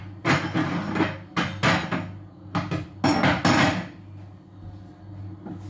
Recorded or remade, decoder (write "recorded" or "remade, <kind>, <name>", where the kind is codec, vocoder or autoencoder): recorded